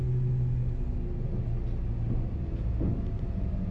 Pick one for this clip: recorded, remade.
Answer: recorded